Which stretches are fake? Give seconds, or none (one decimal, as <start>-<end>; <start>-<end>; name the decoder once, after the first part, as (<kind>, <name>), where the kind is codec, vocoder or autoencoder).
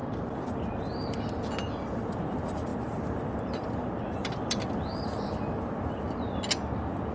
2.7-5.7 (vocoder, BigVGAN v2)